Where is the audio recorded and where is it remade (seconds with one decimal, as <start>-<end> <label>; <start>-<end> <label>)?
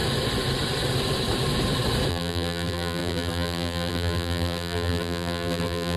0.0-2.1 recorded; 2.1-6.0 remade